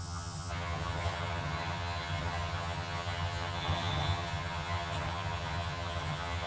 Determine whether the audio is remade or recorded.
remade